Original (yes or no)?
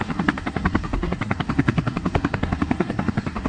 no